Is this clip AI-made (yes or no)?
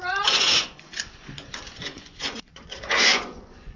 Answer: yes